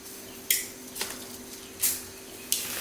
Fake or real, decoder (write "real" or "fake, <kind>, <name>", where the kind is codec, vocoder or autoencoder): real